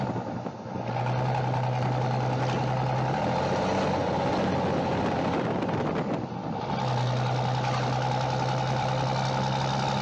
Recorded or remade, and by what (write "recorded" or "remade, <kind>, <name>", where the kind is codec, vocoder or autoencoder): recorded